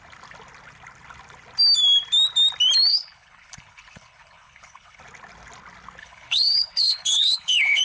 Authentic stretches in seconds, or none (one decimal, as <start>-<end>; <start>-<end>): 0.0-2.9; 5.0-6.0